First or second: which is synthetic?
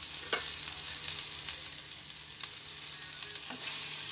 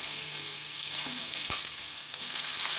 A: second